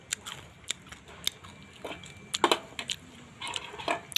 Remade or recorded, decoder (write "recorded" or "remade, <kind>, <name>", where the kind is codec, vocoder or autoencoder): recorded